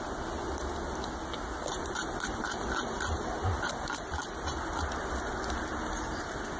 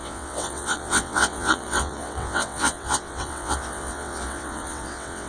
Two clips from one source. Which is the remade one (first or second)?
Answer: second